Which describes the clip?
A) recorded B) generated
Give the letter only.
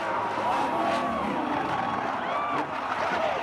B